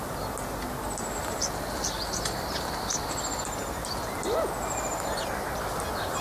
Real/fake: real